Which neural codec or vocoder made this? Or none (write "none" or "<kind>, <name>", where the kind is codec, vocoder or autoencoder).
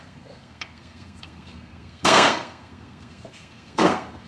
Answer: codec, SNAC